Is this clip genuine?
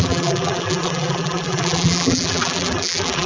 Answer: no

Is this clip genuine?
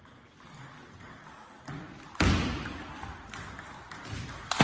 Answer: yes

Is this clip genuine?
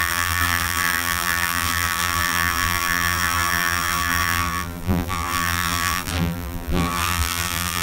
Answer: no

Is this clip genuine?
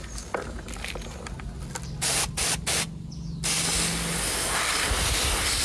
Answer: yes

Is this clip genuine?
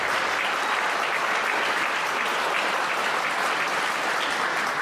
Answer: yes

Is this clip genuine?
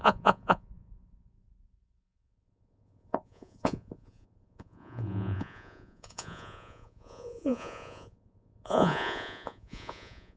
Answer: no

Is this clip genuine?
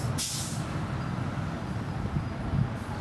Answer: yes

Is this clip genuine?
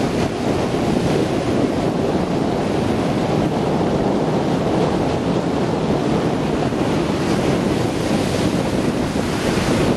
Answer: yes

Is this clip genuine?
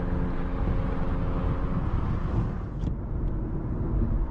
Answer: yes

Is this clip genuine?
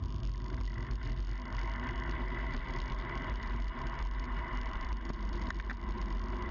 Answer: yes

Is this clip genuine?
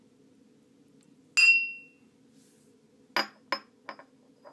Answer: yes